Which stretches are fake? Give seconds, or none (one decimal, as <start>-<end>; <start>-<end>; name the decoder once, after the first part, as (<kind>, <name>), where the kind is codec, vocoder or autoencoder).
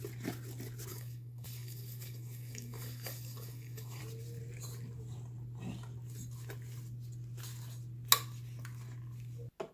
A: 0.9-4.0 (codec, DAC)